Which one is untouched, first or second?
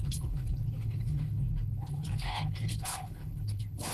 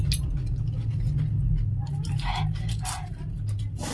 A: second